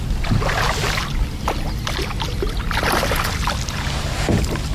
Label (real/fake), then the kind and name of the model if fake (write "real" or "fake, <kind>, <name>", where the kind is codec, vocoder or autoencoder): real